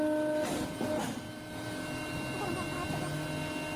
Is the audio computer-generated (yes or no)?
no